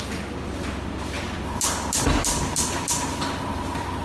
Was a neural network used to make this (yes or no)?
no